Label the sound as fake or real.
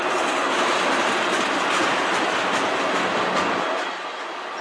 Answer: real